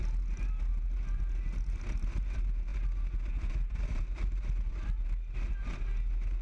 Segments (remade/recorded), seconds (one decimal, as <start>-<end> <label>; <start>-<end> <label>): 0.0-6.4 recorded